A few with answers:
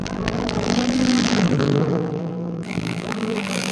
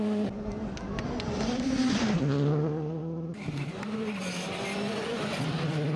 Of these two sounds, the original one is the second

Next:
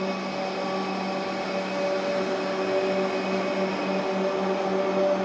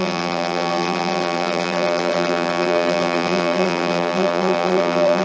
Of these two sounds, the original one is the first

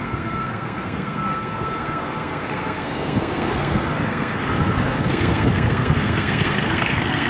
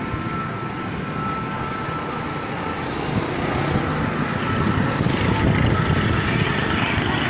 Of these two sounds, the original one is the second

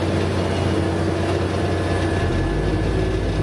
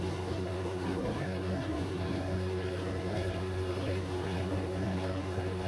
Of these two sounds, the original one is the first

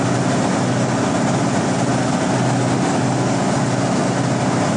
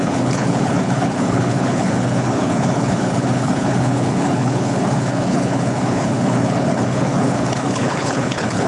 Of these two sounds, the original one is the first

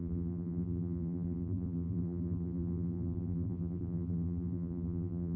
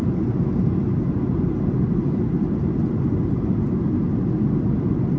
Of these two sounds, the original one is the second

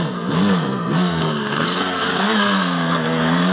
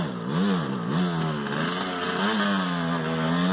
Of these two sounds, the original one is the second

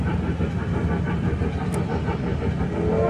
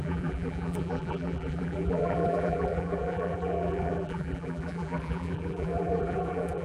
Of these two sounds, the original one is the first